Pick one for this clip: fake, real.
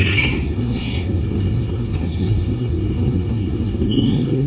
fake